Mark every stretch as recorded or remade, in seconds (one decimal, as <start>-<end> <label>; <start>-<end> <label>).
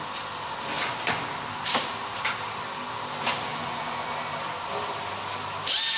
0.0-0.7 recorded; 0.7-1.3 remade; 1.3-3.5 recorded; 3.5-4.1 remade; 4.1-6.0 recorded